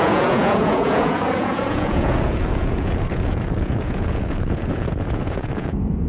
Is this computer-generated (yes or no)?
yes